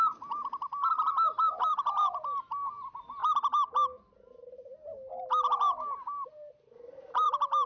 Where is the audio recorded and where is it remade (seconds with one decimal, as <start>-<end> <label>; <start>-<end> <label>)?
0.0-7.7 recorded